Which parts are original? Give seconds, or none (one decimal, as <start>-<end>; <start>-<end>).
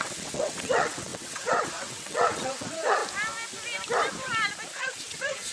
3.0-4.7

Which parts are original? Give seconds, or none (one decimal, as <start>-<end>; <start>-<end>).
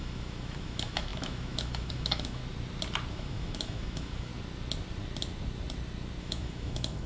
2.4-3.1; 4.3-6.2